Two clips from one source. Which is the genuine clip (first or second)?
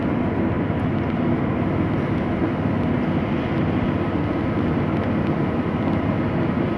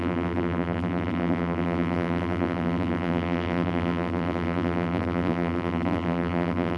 first